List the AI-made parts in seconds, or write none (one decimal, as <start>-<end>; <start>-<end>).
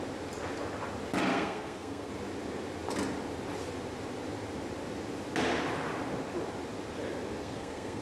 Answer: 1.3-2.1; 7.4-8.0